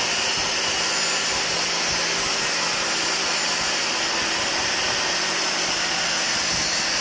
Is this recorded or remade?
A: recorded